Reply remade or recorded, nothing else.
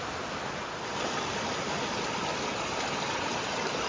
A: recorded